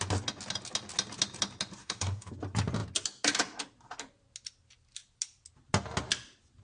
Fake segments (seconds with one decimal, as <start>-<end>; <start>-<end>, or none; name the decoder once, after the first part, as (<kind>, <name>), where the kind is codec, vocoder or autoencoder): 1.8-2.3 (autoencoder, DAC-VAE)